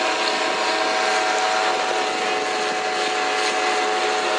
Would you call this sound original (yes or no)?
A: yes